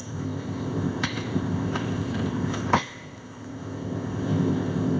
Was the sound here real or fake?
fake